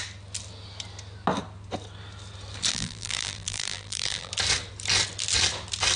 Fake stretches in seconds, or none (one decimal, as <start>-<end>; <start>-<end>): 2.7-4.3